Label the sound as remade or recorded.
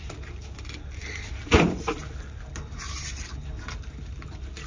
recorded